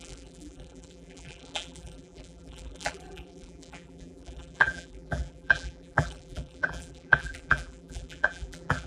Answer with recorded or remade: remade